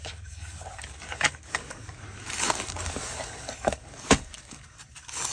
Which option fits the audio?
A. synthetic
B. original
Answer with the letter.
A